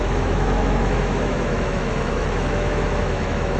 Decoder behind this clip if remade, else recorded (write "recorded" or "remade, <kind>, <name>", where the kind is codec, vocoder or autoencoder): remade, autoencoder, DAC-VAE